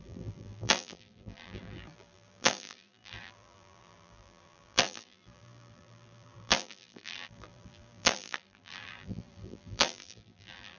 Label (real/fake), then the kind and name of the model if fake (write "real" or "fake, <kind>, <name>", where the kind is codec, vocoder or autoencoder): fake, vocoder, BigVGAN v2